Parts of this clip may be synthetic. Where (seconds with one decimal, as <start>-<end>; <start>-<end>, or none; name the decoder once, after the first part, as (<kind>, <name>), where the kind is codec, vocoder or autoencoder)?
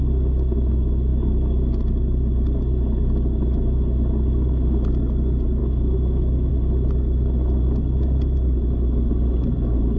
1.1-1.7 (autoencoder, DAC-VAE); 5.6-6.5